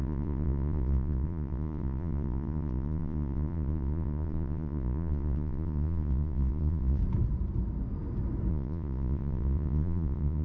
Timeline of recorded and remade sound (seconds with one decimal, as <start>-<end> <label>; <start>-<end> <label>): 0.0-7.0 remade; 7.0-8.5 recorded; 8.5-10.4 remade